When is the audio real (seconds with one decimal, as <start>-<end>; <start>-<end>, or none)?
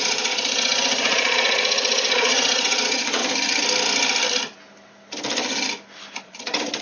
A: 3.2-6.2